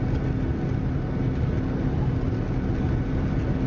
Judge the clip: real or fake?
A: real